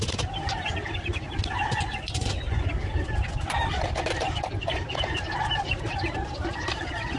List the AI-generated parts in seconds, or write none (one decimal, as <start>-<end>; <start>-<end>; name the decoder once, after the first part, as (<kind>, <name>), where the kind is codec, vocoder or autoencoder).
1.9-2.7 (vocoder, Vocos)